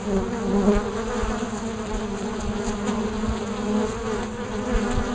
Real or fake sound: real